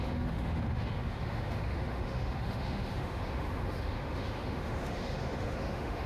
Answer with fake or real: fake